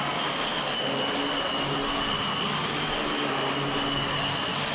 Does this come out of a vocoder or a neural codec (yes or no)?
no